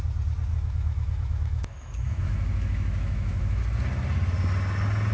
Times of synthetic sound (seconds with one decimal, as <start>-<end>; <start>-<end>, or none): 0.5-3.6

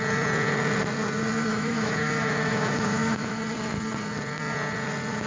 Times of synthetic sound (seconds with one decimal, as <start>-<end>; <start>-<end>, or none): 1.5-3.4

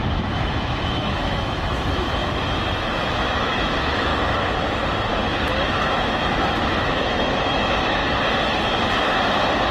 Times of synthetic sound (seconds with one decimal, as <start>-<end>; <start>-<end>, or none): 0.0-2.2; 2.8-4.1; 5.7-8.0

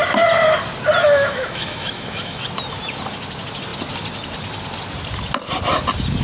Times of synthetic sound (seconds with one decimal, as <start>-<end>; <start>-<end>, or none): 1.0-2.4